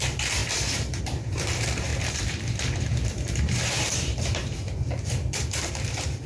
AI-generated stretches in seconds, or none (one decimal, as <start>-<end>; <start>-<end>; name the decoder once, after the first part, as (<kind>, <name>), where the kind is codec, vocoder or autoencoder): 0.0-6.3 (vocoder, BigVGAN v2)